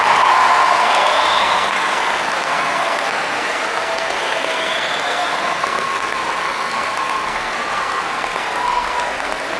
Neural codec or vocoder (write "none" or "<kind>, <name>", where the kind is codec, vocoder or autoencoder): codec, SNAC